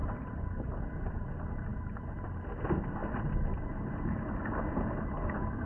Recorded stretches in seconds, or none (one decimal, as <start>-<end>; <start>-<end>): 1.7-2.5; 3.0-4.7